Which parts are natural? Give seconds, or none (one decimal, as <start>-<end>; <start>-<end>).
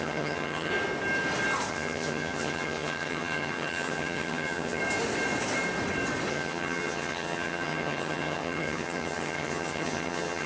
0.7-1.7; 4.8-6.3